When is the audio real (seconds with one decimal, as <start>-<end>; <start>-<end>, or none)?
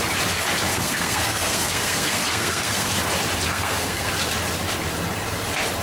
0.0-0.7; 2.9-3.5; 4.1-5.8